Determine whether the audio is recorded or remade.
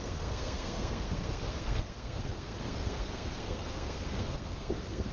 remade